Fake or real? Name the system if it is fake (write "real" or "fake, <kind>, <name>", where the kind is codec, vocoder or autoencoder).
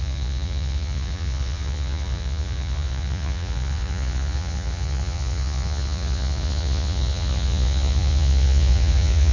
fake, vocoder, Vocos